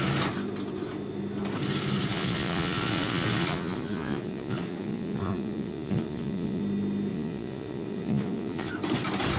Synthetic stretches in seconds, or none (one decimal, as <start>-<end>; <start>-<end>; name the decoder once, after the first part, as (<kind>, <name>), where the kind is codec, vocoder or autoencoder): 2.1-6.6 (vocoder, Vocos); 7.1-8.7